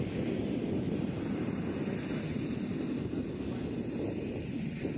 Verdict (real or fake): real